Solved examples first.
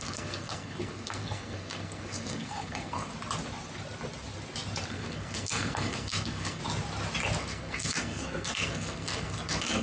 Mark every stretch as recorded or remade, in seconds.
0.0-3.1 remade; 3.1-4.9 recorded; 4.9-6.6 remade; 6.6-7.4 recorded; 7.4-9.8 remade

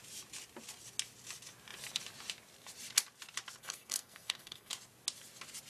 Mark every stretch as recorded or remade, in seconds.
0.0-3.6 recorded; 3.6-4.7 remade; 4.7-5.7 recorded

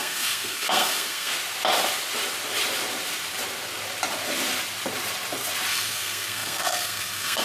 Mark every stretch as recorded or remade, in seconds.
0.0-1.3 remade; 1.3-5.7 recorded; 5.7-7.4 remade

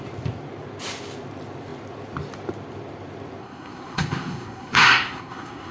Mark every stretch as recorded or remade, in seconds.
0.0-3.4 recorded; 3.4-5.7 remade

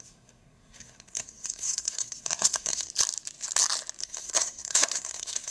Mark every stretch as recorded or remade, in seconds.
0.0-2.9 remade; 2.9-4.0 recorded; 4.0-5.5 remade